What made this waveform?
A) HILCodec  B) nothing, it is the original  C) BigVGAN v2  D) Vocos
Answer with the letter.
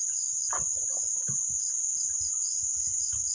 B